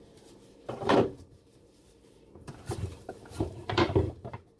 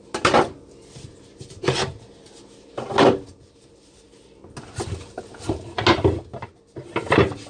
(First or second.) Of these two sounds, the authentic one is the second